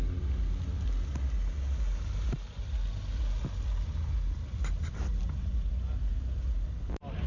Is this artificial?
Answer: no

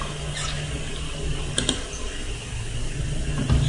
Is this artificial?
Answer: no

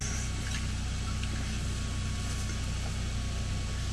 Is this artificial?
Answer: no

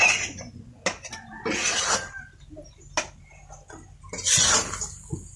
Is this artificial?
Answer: no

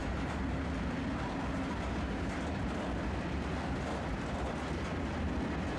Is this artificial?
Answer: no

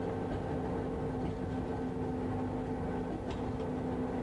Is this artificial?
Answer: no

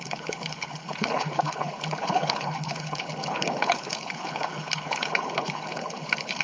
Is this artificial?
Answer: yes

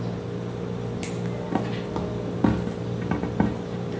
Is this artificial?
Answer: no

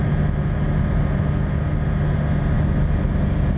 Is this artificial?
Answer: no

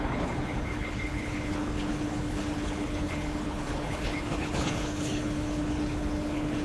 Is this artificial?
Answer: yes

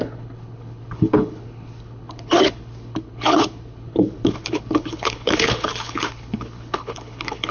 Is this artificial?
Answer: yes